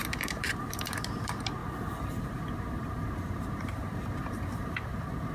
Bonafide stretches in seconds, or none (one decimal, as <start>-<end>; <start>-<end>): 1.6-2.2

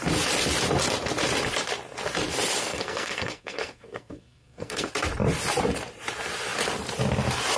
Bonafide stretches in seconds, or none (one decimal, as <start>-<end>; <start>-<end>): 0.0-2.6; 4.9-7.6

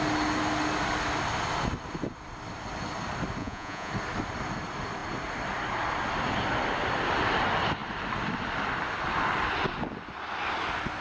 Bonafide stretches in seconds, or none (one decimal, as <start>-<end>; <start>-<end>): 0.0-3.4; 3.9-11.0

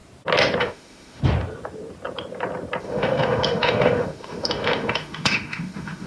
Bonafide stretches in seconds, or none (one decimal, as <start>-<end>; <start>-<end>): 0.0-0.6; 1.2-2.8